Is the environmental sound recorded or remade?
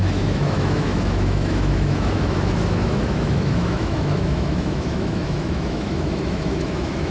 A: remade